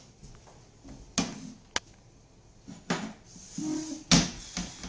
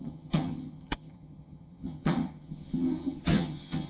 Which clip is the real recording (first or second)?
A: first